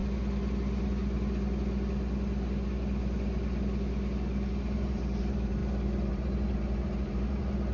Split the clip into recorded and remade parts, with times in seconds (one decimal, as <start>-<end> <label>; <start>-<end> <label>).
0.0-4.6 recorded; 4.6-5.6 remade; 5.6-6.1 recorded; 6.1-7.7 remade